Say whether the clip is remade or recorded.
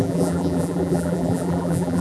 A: remade